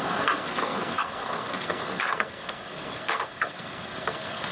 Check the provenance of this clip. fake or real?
fake